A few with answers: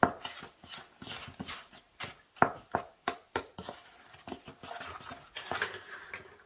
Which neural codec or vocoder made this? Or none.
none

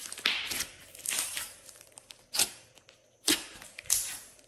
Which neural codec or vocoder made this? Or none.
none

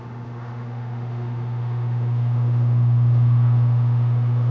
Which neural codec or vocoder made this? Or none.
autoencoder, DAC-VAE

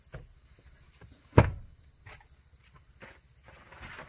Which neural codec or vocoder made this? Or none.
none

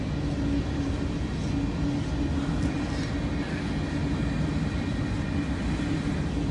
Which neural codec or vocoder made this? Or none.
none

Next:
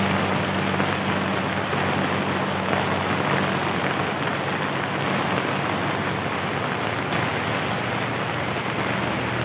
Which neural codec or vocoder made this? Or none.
none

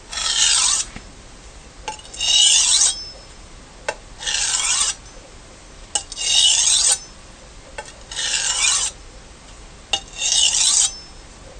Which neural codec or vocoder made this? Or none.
none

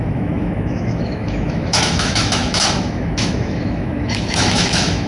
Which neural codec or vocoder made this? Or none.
autoencoder, DAC-VAE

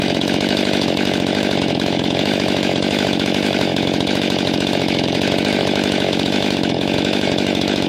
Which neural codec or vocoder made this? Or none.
autoencoder, DAC-VAE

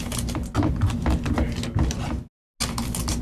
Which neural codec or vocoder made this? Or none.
none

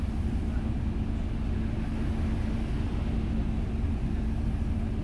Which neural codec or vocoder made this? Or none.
none